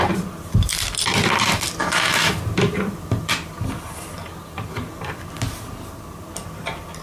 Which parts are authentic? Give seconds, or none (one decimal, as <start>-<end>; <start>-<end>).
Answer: 0.0-1.8; 2.3-7.0